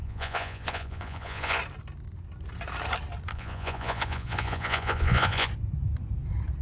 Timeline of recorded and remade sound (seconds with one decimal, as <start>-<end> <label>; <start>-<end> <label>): 0.0-1.6 remade; 1.6-3.3 recorded; 3.3-5.5 remade; 5.5-6.6 recorded